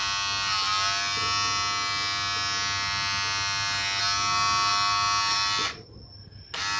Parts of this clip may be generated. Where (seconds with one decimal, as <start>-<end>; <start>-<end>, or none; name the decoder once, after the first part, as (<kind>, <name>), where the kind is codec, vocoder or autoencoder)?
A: none